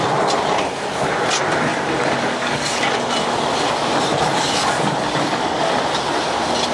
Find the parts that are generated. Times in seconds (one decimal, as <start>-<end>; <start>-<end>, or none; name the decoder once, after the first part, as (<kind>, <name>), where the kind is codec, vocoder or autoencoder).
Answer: 1.7-2.8 (codec, DAC); 4.1-5.7